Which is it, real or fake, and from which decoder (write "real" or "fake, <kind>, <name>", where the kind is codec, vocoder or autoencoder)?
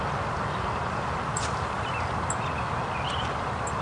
real